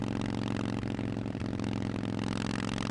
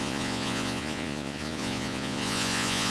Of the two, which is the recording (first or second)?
first